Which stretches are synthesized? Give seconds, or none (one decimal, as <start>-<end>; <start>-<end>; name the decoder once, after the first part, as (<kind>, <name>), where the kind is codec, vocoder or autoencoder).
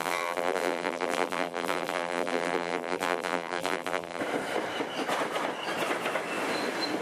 0.0-4.2 (vocoder, BigVGAN v2)